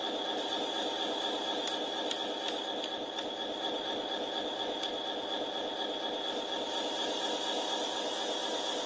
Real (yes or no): yes